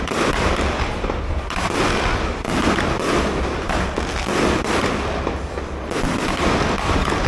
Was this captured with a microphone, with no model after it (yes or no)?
yes